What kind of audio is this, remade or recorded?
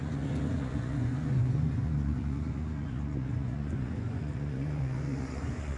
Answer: remade